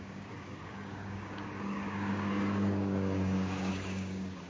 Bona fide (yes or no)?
no